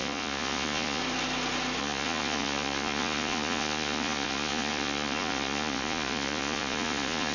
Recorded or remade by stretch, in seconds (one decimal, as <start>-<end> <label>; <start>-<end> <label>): 0.0-1.0 remade; 1.0-1.8 recorded; 1.8-7.3 remade